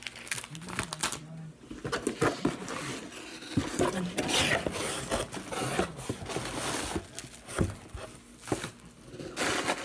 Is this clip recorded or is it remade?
recorded